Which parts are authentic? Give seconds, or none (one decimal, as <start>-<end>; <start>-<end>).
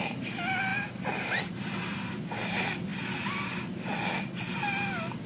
0.0-5.3